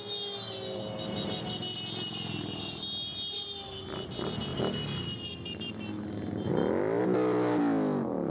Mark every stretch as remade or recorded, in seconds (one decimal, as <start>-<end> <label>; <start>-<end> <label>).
0.0-8.3 recorded